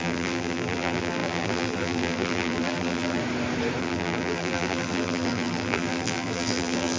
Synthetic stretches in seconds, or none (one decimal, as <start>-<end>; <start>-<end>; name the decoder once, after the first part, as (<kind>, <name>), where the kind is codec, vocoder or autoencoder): 0.0-3.2 (vocoder, BigVGAN v2); 3.8-7.0